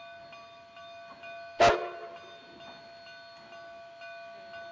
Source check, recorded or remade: recorded